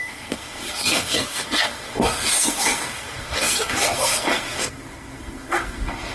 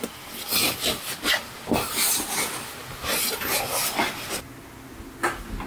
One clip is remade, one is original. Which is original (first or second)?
second